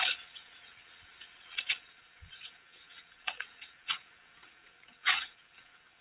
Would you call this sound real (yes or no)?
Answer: no